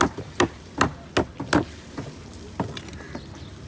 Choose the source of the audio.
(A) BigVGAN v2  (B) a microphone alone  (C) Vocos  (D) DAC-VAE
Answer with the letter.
B